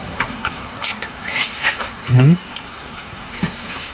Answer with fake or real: fake